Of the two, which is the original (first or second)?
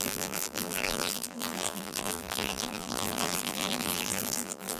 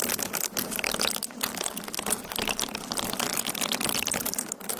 second